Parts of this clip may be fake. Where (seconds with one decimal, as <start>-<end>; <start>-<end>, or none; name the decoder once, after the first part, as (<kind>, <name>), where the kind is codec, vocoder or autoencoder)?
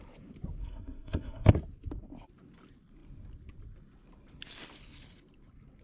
0.6-1.5 (codec, SNAC)